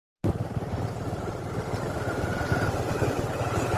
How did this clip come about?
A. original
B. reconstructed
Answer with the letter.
B